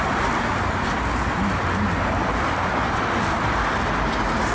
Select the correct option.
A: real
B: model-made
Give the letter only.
A